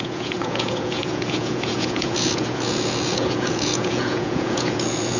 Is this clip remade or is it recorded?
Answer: remade